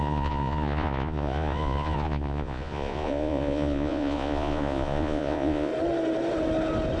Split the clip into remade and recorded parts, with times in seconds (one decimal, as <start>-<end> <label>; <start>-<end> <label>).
0.0-5.7 remade; 5.7-7.0 recorded